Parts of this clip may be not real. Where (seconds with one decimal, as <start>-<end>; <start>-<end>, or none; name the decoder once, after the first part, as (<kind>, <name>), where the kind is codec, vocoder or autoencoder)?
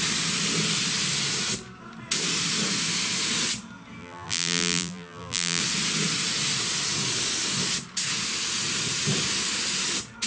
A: 4.0-5.6 (vocoder, BigVGAN v2)